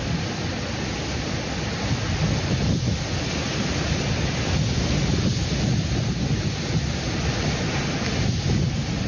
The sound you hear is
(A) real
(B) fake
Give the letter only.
A